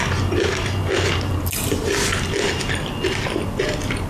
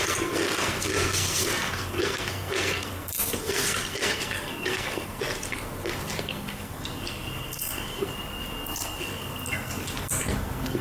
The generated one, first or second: second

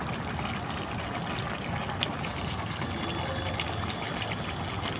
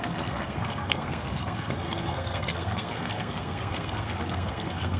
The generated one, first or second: second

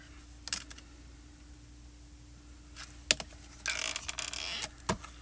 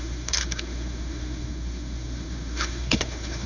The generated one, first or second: second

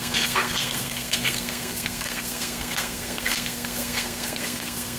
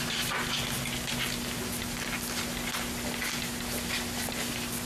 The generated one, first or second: first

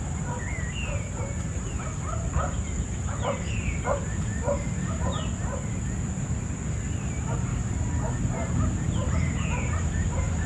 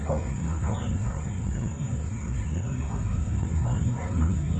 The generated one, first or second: second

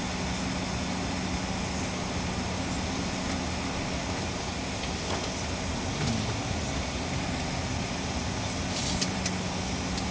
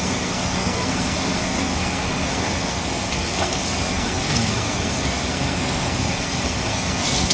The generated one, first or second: second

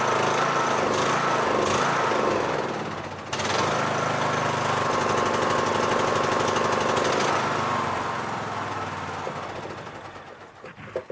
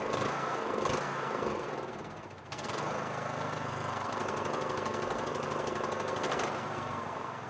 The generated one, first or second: second